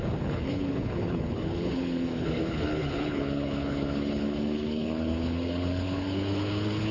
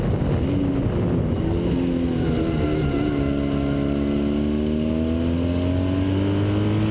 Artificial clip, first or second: first